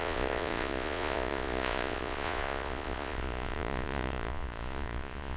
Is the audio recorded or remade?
remade